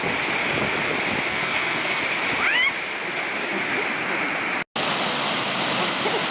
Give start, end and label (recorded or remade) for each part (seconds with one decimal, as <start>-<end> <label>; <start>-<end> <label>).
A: 0.0-1.3 recorded; 1.3-2.0 remade; 2.0-6.3 recorded